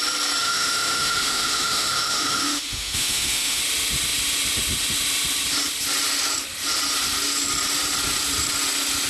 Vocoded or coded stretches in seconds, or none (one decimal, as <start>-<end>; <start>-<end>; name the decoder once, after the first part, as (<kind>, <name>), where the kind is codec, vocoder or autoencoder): 0.4-3.6 (autoencoder, DAC-VAE)